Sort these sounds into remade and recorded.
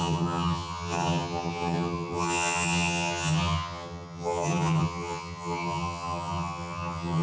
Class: remade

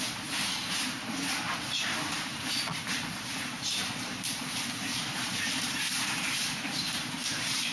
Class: remade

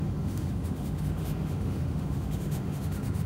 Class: remade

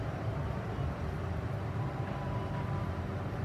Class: remade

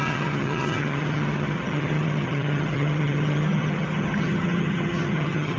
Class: remade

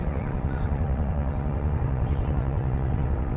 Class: remade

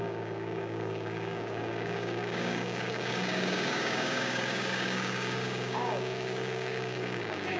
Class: remade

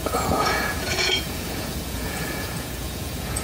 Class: remade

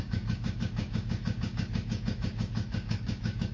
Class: remade